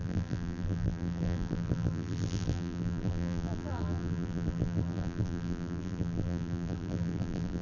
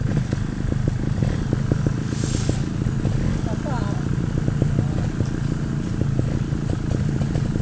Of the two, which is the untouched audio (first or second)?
second